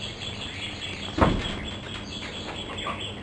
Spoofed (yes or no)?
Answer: no